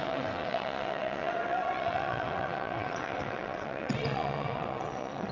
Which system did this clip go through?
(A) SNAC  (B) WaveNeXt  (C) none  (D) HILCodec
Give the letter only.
B